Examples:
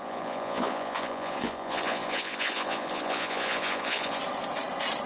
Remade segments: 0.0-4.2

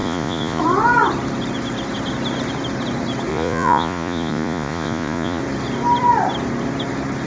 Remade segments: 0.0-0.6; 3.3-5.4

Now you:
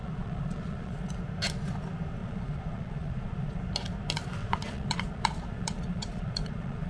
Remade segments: 0.0-1.1; 2.2-3.6; 4.4-6.9